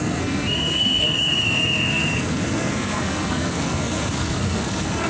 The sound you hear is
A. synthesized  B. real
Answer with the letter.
A